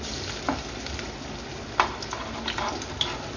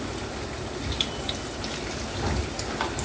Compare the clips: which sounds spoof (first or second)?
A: second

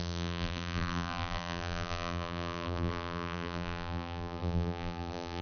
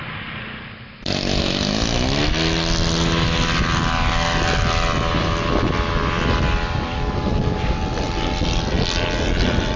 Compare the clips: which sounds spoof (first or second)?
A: first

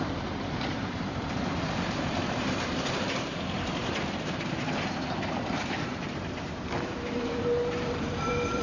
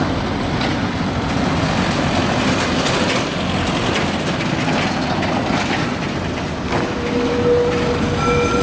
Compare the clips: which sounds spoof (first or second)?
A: first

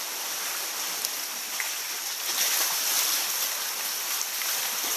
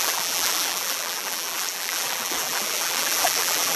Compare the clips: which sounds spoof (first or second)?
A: second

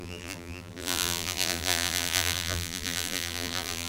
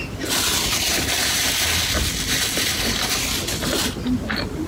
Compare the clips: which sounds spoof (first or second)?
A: first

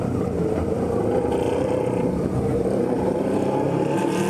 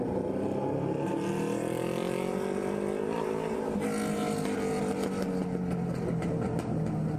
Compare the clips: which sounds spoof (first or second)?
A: first